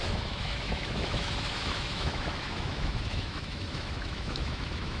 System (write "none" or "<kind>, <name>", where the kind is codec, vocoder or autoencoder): autoencoder, DAC-VAE